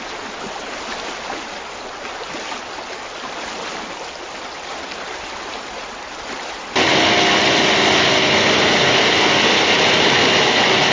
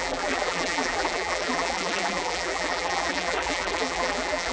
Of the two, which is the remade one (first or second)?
second